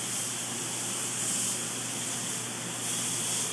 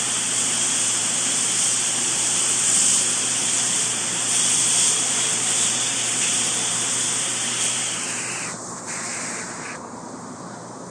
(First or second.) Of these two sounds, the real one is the first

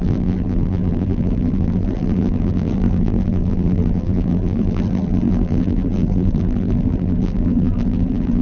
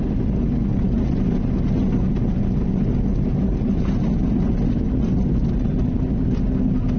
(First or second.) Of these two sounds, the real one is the second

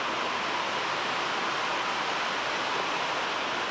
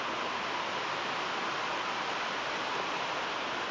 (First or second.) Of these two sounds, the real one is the first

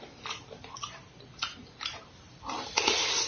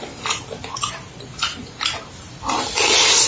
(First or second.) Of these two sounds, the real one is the second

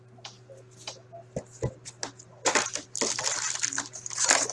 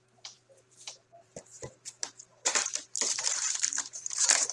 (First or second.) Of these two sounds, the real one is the first